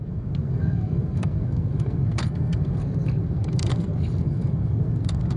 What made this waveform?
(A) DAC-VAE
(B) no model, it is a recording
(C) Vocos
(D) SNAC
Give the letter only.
D